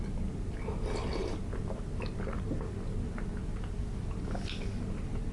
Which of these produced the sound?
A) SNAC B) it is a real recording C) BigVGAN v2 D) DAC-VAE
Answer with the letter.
B